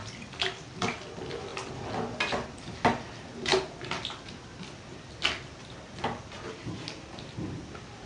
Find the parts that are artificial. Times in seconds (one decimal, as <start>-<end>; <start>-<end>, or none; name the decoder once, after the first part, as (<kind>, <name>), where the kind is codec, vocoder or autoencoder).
none